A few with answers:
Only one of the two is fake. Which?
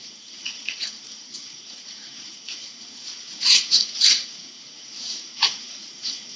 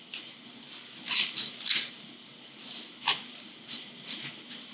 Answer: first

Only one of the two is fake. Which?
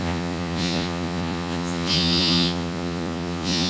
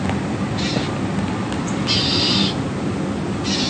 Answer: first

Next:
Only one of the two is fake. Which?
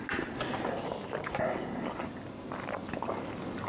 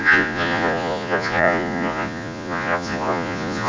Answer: second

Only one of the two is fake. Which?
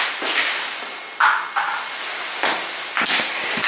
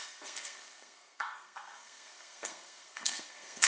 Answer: second